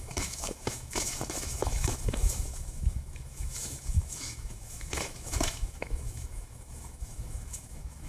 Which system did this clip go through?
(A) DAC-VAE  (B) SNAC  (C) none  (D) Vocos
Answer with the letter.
A